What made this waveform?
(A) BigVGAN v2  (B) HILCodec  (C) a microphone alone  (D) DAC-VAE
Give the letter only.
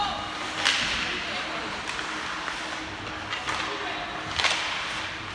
C